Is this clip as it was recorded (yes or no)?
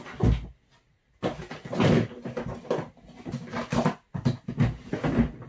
yes